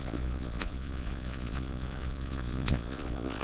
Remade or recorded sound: remade